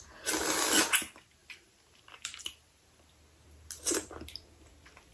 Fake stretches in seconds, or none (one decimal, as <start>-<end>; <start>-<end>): 1.4-3.1